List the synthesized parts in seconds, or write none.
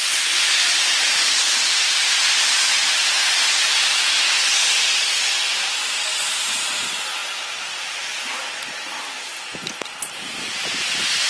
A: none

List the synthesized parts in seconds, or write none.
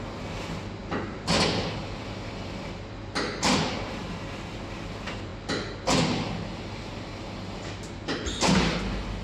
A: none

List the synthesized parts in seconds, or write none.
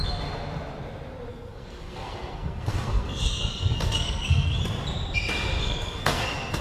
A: 1.3-4.6 (codec, SNAC); 5.6-6.6